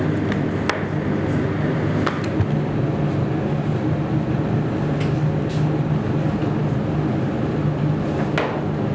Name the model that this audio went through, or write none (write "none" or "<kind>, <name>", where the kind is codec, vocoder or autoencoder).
none